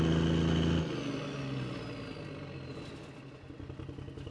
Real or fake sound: real